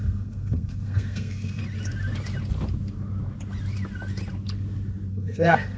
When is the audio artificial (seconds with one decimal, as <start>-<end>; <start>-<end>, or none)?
0.0-1.6; 5.1-5.8